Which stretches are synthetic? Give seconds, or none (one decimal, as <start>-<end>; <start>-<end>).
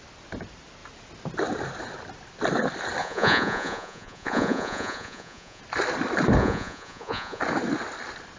3.0-5.6; 6.4-7.4